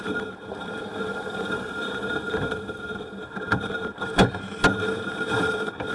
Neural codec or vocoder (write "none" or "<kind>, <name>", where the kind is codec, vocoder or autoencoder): vocoder, BigVGAN v2